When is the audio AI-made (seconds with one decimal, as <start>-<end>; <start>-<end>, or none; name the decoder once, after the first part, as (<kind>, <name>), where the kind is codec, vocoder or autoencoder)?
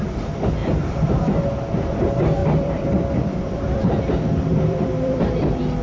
0.6-1.1 (vocoder, BigVGAN v2); 2.4-4.0; 4.5-5.8